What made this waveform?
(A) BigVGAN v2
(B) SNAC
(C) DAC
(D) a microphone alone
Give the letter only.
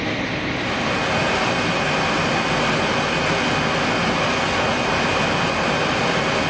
D